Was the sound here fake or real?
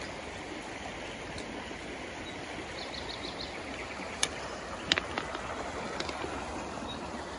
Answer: real